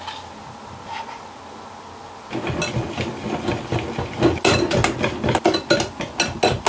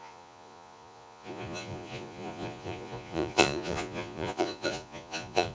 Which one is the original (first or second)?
first